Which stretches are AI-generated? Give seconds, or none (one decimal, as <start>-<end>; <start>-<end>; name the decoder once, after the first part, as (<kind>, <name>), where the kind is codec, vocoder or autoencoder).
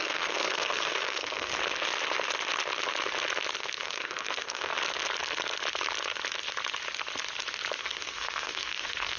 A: 0.0-1.5 (codec, SNAC); 3.6-4.7; 7.8-9.2